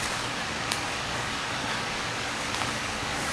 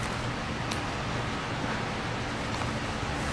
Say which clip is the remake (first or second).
first